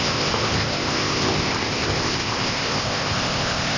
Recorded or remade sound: remade